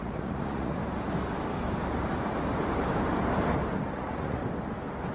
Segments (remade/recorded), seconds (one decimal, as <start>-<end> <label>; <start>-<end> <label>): 0.0-0.8 remade; 0.8-3.9 recorded; 3.9-4.4 remade; 4.4-5.1 recorded